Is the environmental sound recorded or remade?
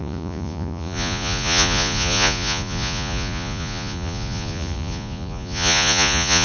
remade